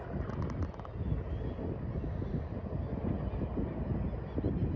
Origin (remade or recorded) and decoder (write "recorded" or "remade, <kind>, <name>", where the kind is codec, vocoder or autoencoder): recorded